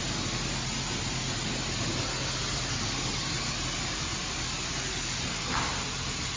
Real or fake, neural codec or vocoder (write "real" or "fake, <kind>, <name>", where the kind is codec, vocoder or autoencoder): real